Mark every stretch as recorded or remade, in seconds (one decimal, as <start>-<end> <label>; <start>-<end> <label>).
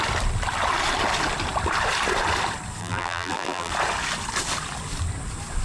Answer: 0.0-2.8 recorded; 2.8-3.7 remade; 3.7-5.6 recorded